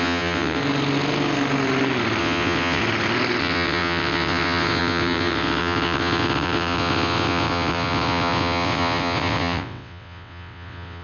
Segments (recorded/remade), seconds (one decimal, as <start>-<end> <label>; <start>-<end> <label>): 0.0-0.6 remade; 0.6-2.2 recorded; 2.2-2.8 remade; 2.8-3.4 recorded; 3.4-11.0 remade